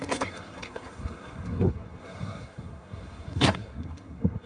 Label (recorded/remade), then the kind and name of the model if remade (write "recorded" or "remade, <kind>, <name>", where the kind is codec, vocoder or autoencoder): remade, codec, SNAC